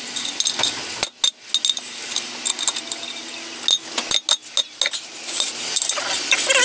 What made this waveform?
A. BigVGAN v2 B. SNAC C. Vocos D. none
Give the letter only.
D